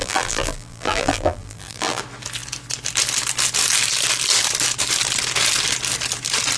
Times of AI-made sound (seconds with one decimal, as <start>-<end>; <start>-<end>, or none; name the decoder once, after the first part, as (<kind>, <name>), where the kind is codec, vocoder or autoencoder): 0.0-2.0 (vocoder, BigVGAN v2)